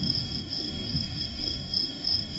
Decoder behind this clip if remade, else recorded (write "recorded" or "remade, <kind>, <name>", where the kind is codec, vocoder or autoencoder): remade, codec, DAC